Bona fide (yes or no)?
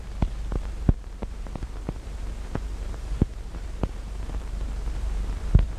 no